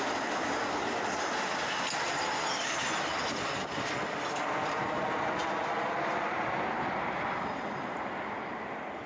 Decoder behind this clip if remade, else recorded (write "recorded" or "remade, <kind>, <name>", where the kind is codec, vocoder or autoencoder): recorded